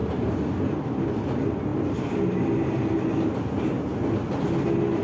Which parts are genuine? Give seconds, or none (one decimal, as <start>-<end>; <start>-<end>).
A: 0.0-1.7; 4.3-5.0